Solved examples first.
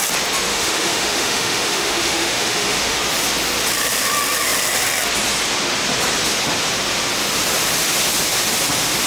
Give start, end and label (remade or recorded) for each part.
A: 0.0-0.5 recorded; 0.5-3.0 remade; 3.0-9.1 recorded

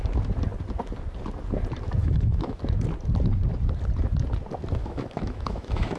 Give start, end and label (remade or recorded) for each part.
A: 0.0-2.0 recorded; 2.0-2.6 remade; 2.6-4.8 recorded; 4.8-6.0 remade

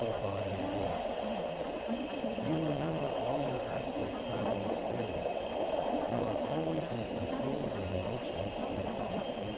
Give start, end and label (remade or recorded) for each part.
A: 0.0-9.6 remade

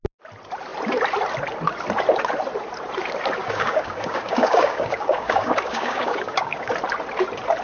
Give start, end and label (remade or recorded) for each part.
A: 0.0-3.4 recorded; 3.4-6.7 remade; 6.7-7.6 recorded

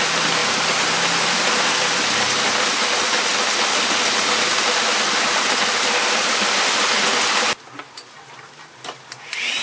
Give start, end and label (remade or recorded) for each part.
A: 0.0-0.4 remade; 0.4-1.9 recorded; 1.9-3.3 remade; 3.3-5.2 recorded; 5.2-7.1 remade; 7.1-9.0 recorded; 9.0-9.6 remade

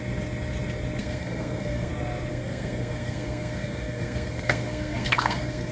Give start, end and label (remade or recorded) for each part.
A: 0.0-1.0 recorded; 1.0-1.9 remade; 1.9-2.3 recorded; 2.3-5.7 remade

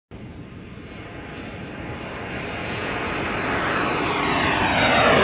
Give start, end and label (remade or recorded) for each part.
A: 0.0-2.6 recorded; 2.6-3.1 remade; 3.1-5.2 recorded